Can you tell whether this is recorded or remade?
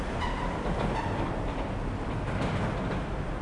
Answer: remade